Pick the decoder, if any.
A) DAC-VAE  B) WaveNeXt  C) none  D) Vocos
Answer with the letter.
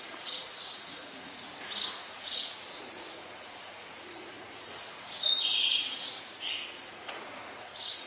D